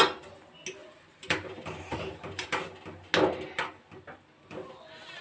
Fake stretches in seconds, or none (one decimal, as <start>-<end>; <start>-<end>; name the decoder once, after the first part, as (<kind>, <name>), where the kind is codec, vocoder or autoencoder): 0.8-2.6 (vocoder, BigVGAN v2)